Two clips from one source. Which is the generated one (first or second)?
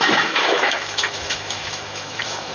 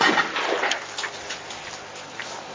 first